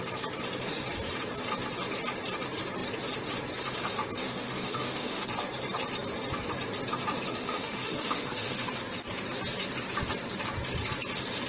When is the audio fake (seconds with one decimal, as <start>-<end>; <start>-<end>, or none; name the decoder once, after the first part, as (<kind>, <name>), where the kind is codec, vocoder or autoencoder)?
4.2-5.3 (autoencoder, DAC-VAE); 7.3-8.7

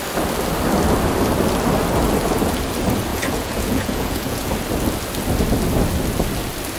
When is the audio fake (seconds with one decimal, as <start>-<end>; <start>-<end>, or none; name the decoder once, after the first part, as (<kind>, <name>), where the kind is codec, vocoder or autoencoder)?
3.1-4.5 (vocoder, Vocos)

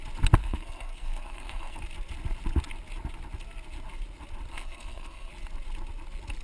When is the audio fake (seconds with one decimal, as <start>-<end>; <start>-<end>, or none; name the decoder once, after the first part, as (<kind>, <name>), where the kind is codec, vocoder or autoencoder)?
0.4-1.8 (codec, SNAC); 4.5-5.3

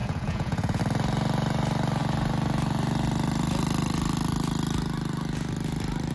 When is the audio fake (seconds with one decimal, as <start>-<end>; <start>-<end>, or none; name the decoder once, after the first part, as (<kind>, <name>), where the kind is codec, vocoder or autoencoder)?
0.0-0.8 (vocoder, Vocos)

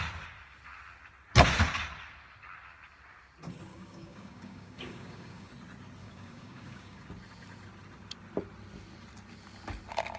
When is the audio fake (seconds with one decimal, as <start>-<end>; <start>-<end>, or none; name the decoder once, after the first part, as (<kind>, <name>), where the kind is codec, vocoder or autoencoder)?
3.7-5.5 (codec, DAC); 6.0-7.1

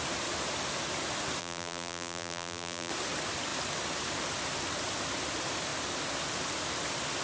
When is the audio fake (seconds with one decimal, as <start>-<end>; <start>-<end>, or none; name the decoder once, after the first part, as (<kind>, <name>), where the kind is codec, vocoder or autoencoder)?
1.4-2.9 (vocoder, BigVGAN v2)

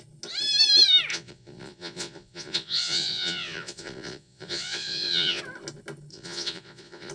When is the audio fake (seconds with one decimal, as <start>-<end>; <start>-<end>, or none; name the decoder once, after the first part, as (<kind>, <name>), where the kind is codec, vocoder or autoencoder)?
1.1-5.4 (vocoder, Vocos); 6.1-7.1